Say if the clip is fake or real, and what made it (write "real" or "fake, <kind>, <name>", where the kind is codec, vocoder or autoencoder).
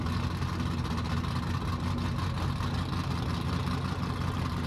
real